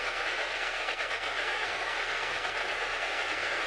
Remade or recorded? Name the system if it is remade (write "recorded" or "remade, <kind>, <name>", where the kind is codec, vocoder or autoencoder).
remade, codec, SNAC